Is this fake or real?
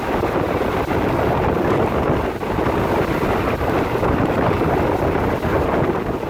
real